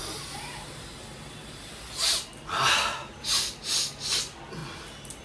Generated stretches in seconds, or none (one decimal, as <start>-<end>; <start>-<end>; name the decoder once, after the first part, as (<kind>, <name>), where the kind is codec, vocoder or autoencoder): none